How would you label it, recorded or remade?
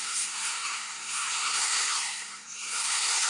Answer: remade